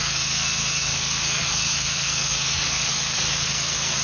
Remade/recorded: remade